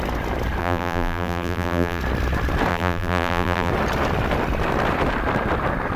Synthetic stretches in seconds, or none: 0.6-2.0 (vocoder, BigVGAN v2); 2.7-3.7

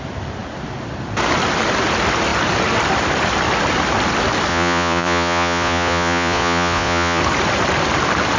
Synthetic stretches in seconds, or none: 4.5-7.2 (vocoder, Vocos)

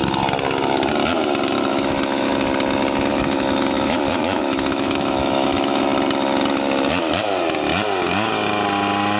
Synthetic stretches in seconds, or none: 1.7-2.3 (autoencoder, DAC-VAE); 3.1-5.8

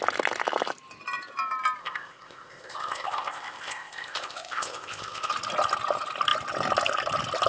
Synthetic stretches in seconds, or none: 1.8-5.3 (codec, ZipCodec)

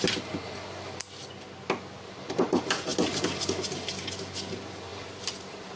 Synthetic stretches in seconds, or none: 2.9-3.5 (vocoder, BigVGAN v2); 4.9-5.8

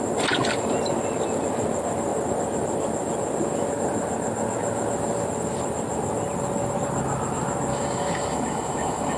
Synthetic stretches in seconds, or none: 7.7-9.2 (autoencoder, DAC-VAE)